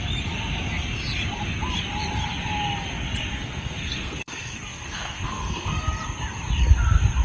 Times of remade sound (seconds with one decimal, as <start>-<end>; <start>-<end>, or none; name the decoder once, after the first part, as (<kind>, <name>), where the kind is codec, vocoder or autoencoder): 3.3-5.8 (codec, SNAC)